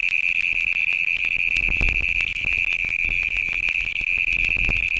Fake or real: real